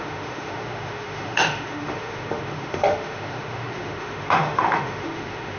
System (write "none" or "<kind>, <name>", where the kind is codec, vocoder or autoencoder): autoencoder, DAC-VAE